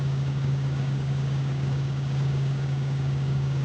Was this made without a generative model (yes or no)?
no